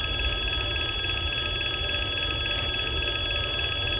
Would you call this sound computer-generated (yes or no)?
no